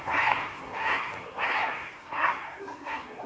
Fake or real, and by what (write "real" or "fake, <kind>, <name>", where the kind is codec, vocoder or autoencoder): fake, codec, SNAC